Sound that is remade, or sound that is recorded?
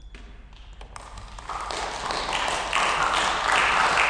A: recorded